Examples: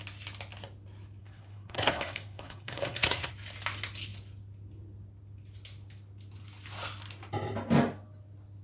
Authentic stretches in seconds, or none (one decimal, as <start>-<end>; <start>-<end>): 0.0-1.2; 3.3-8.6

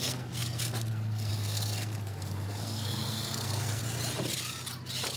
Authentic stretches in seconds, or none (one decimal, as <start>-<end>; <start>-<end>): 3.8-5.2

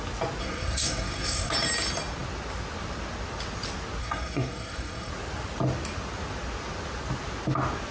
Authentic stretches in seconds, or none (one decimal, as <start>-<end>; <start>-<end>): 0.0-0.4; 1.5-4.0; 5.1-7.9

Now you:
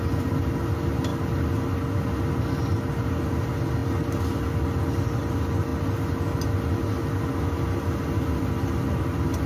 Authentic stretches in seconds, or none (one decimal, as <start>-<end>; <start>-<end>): 0.0-9.5

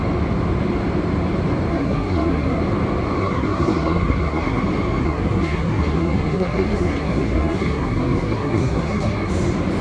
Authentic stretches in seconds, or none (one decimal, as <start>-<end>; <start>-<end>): 0.0-1.7; 2.6-3.2; 4.6-5.0; 9.3-9.8

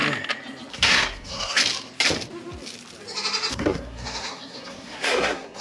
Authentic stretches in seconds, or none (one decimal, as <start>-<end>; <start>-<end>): 0.0-0.7; 1.6-3.5

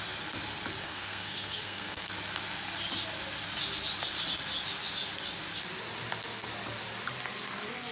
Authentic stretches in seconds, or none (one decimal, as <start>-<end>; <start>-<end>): 0.0-0.8; 2.1-7.9

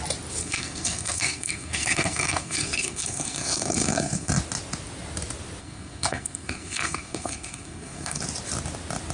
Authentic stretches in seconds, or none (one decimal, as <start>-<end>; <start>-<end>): 0.0-0.4; 4.3-5.6; 8.2-9.1